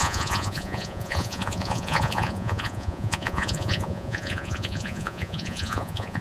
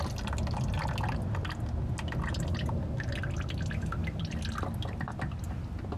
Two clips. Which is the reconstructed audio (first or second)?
first